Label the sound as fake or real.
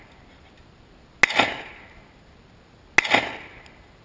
real